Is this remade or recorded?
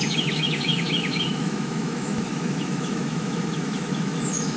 remade